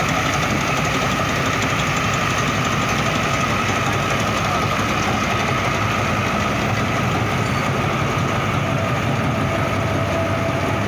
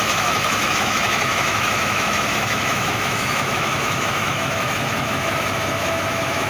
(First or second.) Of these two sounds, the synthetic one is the second